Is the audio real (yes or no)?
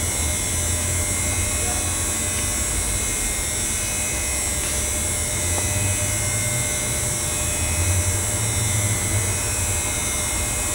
yes